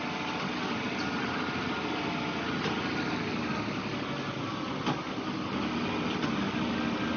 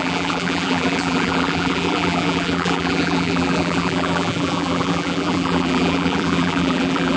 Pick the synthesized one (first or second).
second